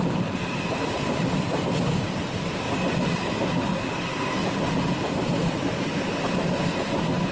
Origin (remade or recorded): recorded